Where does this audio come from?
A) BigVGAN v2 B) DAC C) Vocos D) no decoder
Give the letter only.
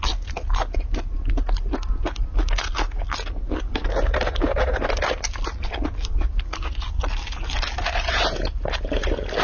D